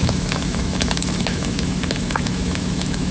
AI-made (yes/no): yes